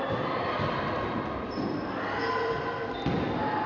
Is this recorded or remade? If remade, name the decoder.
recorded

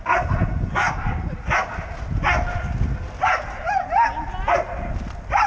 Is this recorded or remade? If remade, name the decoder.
recorded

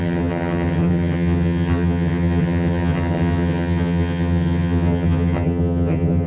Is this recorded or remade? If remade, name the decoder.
remade, vocoder, HiFi-GAN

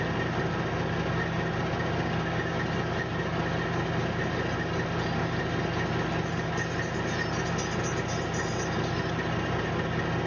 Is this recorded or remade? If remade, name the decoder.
recorded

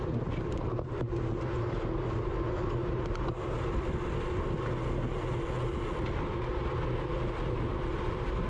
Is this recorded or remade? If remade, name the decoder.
recorded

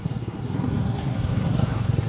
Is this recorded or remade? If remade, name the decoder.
remade, codec, SNAC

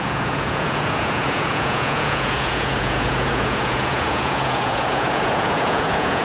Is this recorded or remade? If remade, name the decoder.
remade, vocoder, Vocos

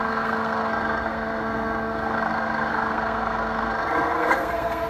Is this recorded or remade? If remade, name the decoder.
remade, codec, SNAC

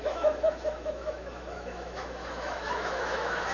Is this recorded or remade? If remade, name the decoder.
remade, autoencoder, DAC-VAE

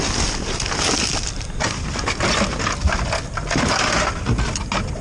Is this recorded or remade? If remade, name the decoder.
recorded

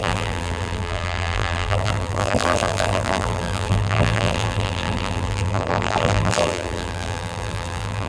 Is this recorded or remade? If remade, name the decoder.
remade, vocoder, BigVGAN v2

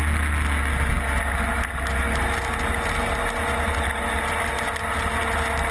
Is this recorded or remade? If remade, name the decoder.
recorded